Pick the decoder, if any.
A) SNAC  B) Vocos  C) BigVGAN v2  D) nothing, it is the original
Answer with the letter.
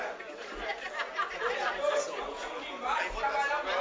D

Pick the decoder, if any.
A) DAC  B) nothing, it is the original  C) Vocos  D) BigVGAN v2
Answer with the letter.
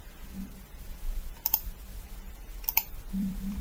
D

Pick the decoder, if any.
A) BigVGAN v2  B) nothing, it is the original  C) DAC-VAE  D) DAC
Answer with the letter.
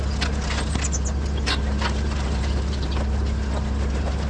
B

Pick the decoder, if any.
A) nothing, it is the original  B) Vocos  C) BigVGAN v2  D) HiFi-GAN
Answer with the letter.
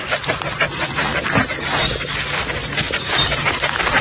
C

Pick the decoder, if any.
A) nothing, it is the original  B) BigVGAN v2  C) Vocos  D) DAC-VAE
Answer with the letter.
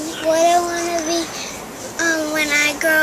A